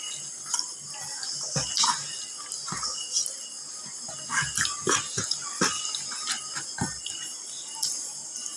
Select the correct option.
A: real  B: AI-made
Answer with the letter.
A